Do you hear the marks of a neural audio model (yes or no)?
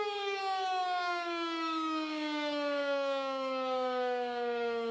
yes